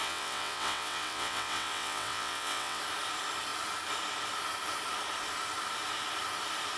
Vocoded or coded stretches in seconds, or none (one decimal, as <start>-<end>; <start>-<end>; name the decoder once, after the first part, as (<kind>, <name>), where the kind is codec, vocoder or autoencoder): 0.0-2.8 (vocoder, WaveNeXt)